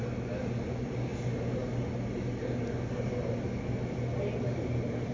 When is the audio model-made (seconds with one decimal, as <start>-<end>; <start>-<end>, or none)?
none